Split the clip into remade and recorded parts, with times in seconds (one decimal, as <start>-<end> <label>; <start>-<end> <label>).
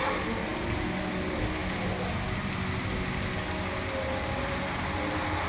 0.0-5.5 recorded